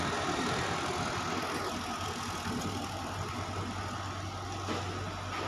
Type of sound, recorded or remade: recorded